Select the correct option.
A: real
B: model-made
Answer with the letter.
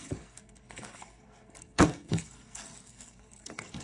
B